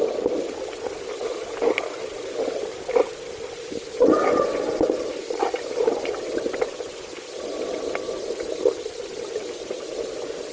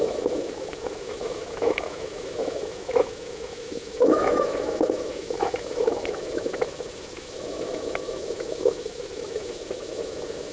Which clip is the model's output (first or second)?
second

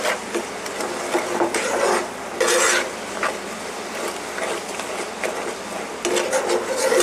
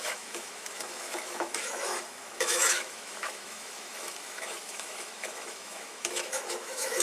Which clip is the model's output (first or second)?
second